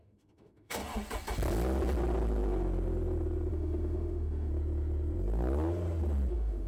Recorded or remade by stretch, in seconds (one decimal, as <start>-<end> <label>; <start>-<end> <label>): 0.0-0.8 remade; 0.8-3.5 recorded; 3.5-4.5 remade; 4.5-6.3 recorded; 6.3-6.7 remade